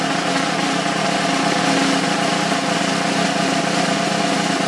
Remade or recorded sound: recorded